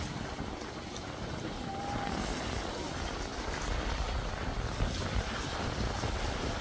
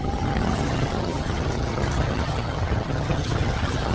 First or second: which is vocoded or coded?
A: second